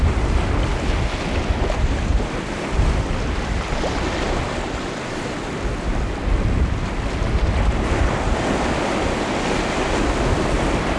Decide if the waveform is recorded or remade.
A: recorded